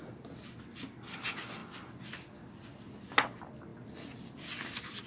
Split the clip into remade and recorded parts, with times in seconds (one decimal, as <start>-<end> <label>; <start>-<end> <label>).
0.0-5.1 recorded